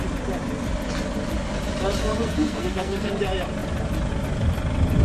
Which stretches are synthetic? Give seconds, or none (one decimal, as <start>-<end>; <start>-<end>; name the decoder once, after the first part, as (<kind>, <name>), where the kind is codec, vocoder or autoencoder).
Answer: 2.0-3.1 (codec, SNAC)